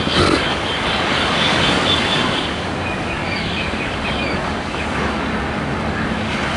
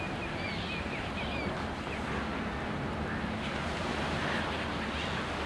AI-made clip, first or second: first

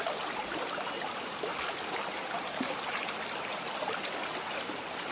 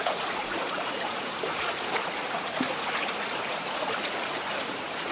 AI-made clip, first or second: second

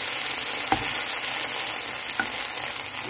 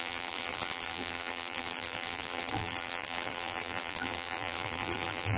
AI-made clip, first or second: second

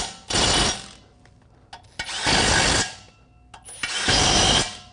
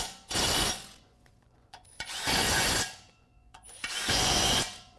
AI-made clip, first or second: second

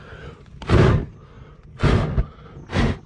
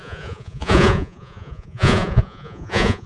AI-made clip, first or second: second